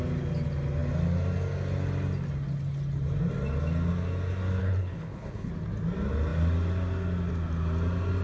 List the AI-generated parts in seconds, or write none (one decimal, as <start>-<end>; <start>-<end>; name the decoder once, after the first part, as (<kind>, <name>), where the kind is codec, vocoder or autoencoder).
4.6-5.5 (codec, HILCodec)